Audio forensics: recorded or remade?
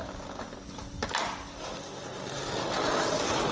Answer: recorded